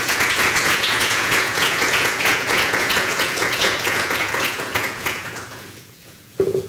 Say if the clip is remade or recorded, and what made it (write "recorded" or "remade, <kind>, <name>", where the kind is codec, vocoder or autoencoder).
remade, vocoder, Vocos